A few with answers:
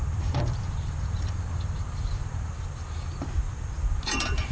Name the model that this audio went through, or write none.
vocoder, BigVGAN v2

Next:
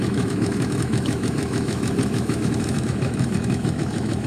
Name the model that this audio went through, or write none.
autoencoder, DAC-VAE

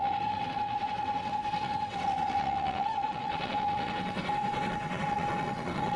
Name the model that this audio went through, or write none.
vocoder, WaveNeXt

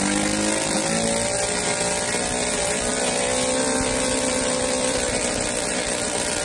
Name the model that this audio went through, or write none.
none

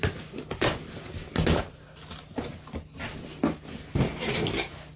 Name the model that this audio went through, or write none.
none